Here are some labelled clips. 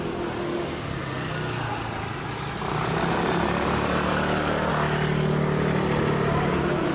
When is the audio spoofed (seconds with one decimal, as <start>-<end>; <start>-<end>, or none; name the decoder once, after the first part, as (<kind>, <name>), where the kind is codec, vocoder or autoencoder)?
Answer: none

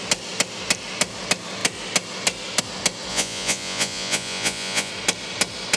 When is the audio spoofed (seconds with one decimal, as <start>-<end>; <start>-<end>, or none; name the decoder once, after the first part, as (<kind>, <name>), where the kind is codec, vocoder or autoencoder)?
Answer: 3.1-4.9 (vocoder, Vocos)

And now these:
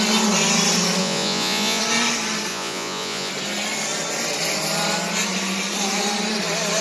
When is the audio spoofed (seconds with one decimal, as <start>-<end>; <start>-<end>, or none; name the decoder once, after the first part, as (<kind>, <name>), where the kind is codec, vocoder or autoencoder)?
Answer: 1.0-1.8 (vocoder, Vocos); 2.5-3.3

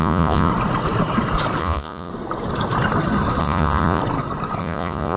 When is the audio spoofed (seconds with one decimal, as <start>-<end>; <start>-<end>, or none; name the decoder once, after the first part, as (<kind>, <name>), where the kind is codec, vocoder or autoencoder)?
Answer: 0.0-0.5 (vocoder, Vocos); 1.6-2.1; 3.4-4.0; 4.6-5.2

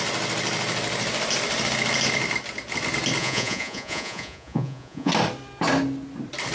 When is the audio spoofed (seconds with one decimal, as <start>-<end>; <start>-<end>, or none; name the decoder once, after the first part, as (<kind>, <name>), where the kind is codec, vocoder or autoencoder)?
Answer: 3.2-5.1 (vocoder, Vocos)

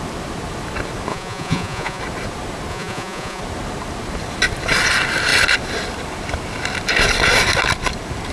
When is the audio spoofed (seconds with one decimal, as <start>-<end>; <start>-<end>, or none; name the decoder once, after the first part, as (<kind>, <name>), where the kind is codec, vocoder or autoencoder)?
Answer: 1.1-2.0 (vocoder, Vocos); 2.7-3.4

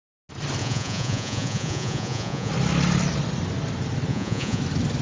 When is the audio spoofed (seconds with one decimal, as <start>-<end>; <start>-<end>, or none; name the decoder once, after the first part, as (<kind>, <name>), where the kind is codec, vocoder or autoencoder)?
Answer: 0.6-2.5 (vocoder, Vocos); 4.1-4.6

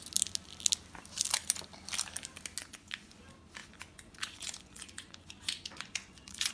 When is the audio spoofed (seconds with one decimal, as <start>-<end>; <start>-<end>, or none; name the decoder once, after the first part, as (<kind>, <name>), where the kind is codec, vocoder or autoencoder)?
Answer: 2.6-3.2 (vocoder, Vocos); 3.6-6.5